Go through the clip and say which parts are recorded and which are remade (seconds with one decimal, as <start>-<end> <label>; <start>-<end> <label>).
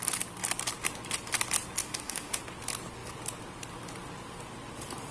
0.0-1.8 recorded; 1.8-2.4 remade; 2.4-5.1 recorded